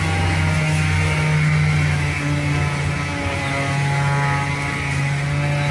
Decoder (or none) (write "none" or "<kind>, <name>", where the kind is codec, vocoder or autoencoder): none